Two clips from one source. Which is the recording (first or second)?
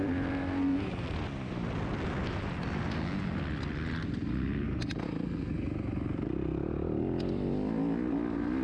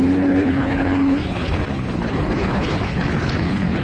first